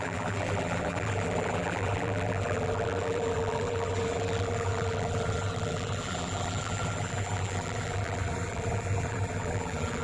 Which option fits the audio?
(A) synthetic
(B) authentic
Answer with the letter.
A